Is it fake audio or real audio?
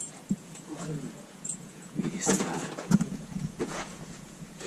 fake